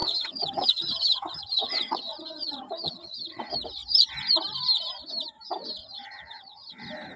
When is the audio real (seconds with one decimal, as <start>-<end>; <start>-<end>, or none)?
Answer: 3.4-5.8; 6.8-7.2